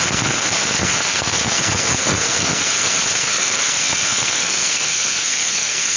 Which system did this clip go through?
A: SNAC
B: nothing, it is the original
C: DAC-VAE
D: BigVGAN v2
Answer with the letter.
A